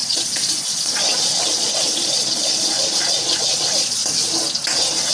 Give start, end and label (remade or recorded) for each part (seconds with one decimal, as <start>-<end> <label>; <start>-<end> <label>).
0.0-4.0 remade; 4.0-5.1 recorded